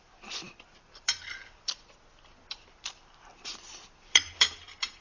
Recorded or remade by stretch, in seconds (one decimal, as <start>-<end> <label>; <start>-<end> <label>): 0.0-5.0 remade